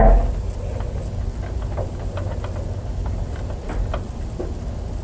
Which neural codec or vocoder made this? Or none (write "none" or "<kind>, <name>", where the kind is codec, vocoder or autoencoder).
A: none